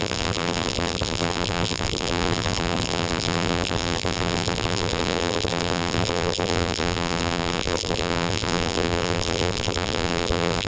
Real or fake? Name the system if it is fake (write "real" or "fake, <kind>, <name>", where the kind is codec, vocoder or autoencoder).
fake, vocoder, BigVGAN v2